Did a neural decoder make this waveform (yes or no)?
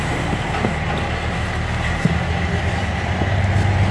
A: no